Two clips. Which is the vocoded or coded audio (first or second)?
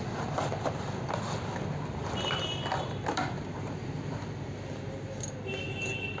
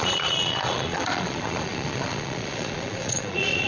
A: second